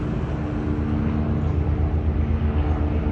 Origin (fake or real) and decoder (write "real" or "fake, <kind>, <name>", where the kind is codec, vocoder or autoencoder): real